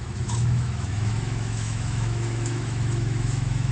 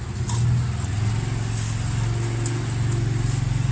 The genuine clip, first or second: second